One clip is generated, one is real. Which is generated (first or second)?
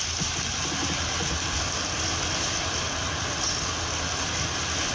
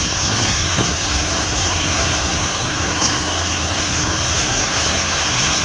second